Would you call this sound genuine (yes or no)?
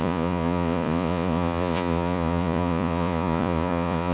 no